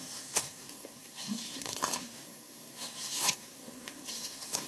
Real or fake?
fake